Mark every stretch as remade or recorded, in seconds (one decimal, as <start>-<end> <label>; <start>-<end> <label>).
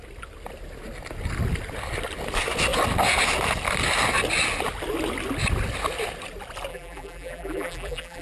0.0-6.7 recorded; 6.7-8.2 remade